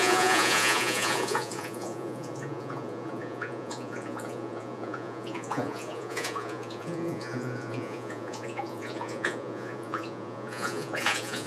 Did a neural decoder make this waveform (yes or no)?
yes